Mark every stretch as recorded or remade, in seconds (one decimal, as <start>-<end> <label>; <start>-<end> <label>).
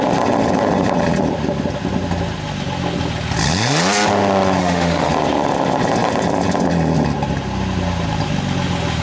0.0-4.6 recorded; 4.6-5.1 remade; 5.1-9.0 recorded